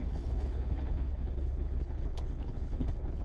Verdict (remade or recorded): remade